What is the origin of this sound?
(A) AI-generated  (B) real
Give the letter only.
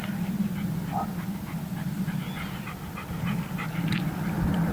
B